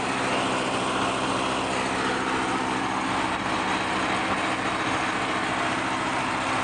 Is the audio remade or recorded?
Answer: recorded